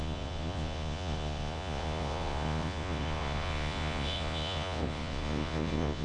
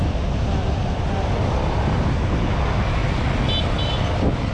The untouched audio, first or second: second